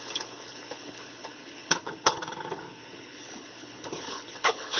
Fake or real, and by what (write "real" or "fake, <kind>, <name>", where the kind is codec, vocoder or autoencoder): fake, codec, HILCodec